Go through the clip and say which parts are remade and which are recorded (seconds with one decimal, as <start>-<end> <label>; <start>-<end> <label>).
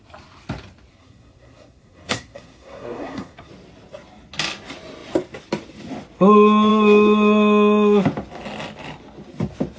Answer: 0.0-0.9 recorded; 0.9-3.5 remade; 3.5-9.8 recorded